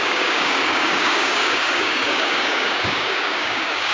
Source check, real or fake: fake